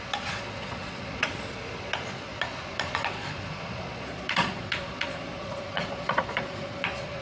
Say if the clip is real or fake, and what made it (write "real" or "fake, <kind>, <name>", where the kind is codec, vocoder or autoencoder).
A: fake, vocoder, Vocos